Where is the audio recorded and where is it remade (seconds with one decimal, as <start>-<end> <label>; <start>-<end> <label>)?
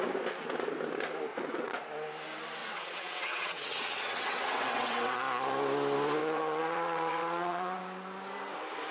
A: 0.0-1.3 recorded; 1.3-1.8 remade; 1.8-2.6 recorded; 2.6-5.2 remade; 5.2-6.2 recorded; 6.2-7.8 remade; 7.8-8.9 recorded